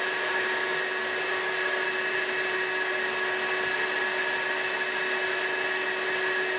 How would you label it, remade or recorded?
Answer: recorded